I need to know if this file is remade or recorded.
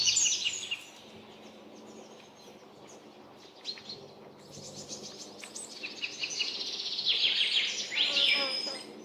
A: recorded